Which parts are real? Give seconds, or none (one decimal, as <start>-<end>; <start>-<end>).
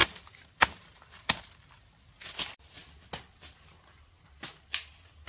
0.0-5.3